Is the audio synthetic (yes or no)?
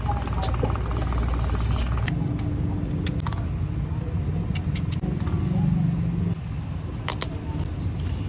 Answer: no